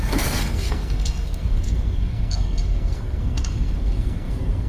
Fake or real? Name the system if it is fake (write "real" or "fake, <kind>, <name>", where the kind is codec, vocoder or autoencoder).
fake, codec, SNAC